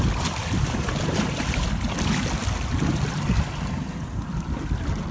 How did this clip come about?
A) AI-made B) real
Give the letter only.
B